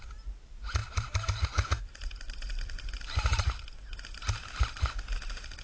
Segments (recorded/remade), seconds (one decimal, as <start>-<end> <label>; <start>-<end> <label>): 0.0-0.8 recorded; 0.8-4.0 remade; 4.0-5.6 recorded